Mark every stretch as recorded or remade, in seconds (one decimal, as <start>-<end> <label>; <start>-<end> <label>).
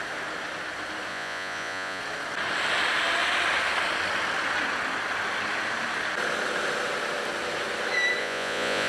0.0-1.1 recorded; 1.1-2.0 remade; 2.0-8.2 recorded; 8.2-8.9 remade